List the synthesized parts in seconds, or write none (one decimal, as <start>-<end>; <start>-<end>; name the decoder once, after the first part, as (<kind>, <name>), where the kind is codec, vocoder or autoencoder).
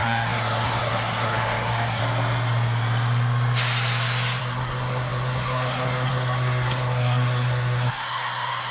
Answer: 0.0-2.0 (codec, SNAC); 4.4-8.7